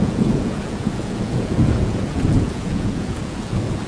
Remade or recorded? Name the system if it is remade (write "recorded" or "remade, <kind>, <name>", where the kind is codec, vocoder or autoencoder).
remade, vocoder, Vocos